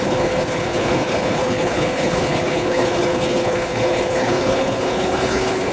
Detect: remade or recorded remade